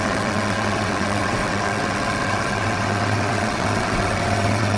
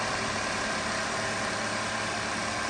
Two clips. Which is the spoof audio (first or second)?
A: first